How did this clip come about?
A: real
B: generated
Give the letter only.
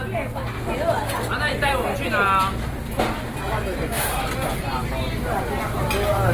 A